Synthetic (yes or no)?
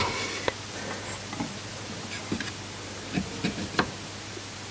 no